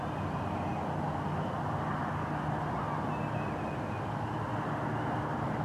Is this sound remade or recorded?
recorded